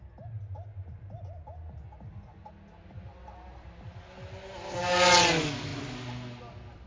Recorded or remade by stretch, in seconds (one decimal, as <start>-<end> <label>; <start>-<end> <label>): 0.0-6.9 recorded